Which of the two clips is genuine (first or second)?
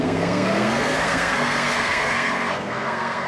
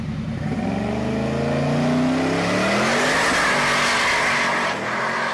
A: second